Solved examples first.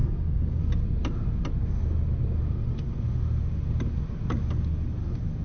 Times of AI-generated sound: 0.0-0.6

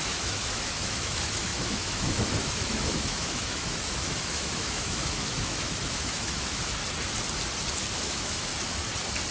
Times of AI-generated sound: 0.0-6.8; 7.9-8.5

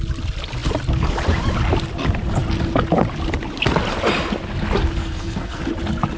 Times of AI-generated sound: 5.0-5.6

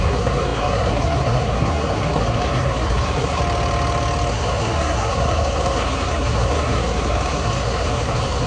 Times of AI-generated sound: 0.0-3.4; 4.3-8.5

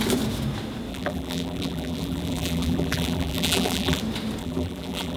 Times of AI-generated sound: 0.9-4.0; 4.4-5.2

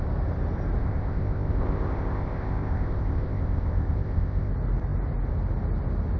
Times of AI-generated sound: 0.8-4.5

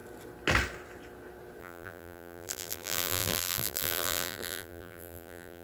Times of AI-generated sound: 1.6-5.6